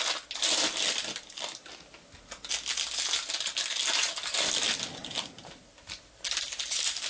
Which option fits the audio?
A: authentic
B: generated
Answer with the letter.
A